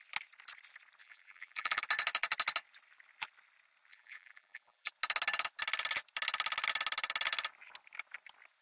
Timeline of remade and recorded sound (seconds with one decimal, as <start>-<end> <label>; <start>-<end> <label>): 0.0-1.0 recorded; 1.0-1.8 remade; 1.8-3.9 recorded; 3.9-4.9 remade; 4.9-8.6 recorded